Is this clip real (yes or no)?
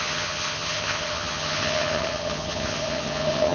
no